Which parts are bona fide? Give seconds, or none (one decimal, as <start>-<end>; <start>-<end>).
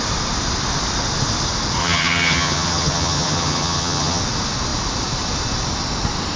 0.0-1.8; 4.2-6.4